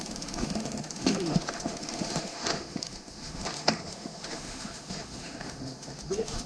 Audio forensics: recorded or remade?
remade